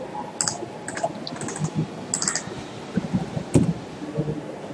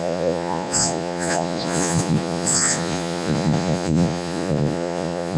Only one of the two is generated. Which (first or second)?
second